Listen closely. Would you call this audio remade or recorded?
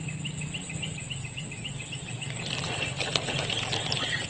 recorded